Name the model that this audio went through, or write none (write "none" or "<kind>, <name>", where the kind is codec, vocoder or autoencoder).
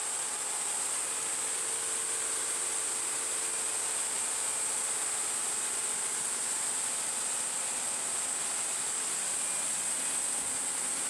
none